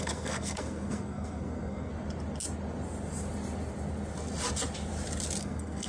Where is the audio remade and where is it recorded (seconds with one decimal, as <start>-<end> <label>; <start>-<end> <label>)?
0.0-1.9 remade; 1.9-5.4 recorded; 5.4-5.9 remade